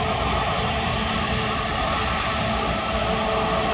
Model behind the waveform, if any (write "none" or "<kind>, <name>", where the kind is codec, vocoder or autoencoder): none